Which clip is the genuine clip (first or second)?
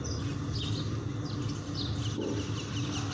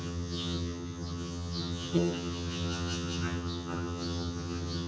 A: first